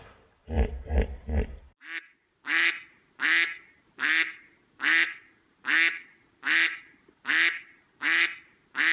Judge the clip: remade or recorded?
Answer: recorded